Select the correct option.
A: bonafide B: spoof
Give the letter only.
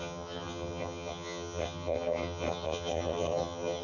B